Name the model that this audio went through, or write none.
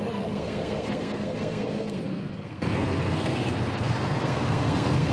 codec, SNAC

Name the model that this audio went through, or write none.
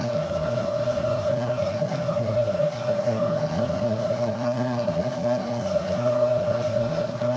codec, SNAC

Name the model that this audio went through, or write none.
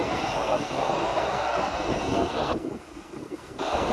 codec, SNAC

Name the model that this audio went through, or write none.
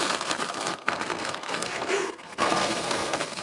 codec, SNAC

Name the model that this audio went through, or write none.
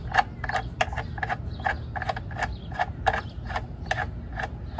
none